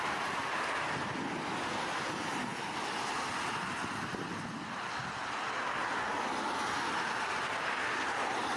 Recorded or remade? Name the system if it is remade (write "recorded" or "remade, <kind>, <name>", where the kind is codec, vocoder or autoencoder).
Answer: recorded